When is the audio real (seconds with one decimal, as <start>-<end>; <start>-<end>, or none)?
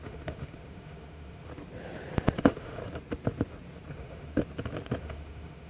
1.5-2.4; 2.8-3.9; 4.4-5.0